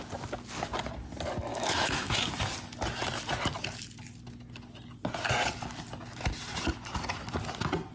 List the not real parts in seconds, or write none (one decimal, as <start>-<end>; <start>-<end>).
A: 1.5-2.3

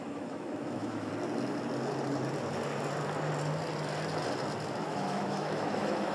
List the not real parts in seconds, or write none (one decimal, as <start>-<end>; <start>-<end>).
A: 0.0-1.1; 4.8-6.1

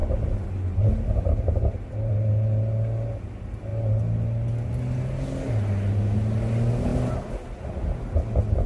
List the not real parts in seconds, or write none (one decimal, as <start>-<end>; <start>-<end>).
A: none

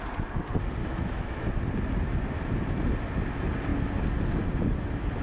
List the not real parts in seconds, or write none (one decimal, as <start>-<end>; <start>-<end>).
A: 0.8-1.5